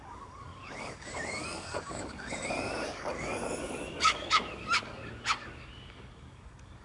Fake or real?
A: fake